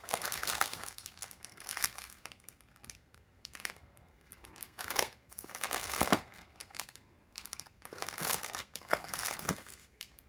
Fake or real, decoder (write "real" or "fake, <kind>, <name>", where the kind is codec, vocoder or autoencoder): fake, codec, SNAC